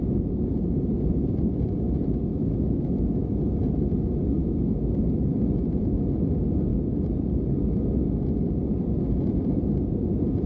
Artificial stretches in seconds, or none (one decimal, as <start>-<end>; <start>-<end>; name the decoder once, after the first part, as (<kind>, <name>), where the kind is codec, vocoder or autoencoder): 2.3-3.4 (autoencoder, DAC-VAE); 4.4-5.1